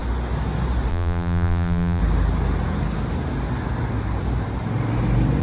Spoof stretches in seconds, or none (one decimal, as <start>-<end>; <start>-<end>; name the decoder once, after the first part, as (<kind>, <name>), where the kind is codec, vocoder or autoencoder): 0.9-2.0 (vocoder, BigVGAN v2)